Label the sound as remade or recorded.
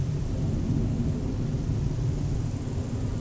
recorded